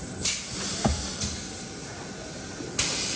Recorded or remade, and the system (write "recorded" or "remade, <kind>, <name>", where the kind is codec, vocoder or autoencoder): recorded